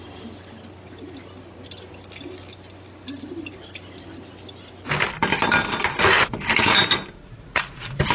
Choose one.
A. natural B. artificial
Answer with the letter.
A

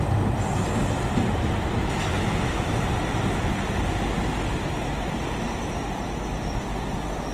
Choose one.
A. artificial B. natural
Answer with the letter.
B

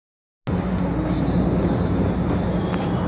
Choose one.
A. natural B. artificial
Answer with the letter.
A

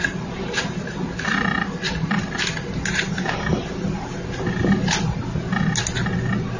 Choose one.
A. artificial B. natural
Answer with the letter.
B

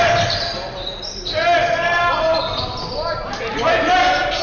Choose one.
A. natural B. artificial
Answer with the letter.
A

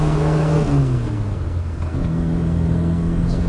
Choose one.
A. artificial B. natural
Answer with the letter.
A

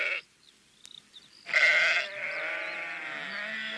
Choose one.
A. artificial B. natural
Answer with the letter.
B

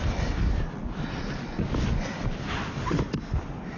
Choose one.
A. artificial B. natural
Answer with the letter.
B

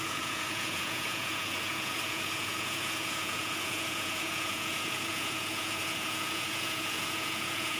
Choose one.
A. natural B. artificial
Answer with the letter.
B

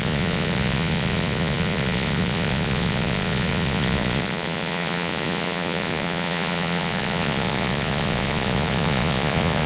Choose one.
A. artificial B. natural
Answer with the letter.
A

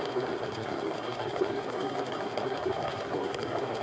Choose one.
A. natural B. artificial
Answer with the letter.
B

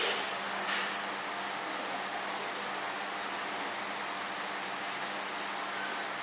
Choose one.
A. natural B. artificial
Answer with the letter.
A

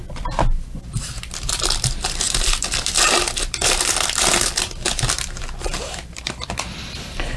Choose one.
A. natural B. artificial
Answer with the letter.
B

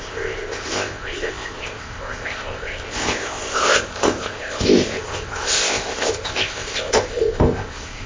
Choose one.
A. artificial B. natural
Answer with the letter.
A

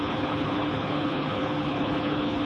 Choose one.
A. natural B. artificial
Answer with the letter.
B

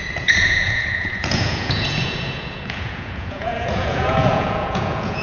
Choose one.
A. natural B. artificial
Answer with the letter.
B